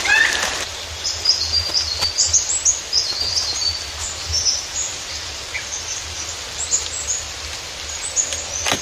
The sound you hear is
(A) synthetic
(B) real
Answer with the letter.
B